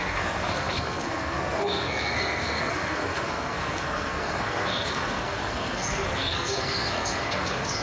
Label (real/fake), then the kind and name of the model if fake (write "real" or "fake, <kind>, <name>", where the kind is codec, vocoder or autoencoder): fake, codec, SNAC